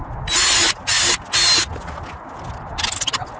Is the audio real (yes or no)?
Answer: yes